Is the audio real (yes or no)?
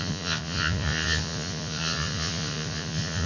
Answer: no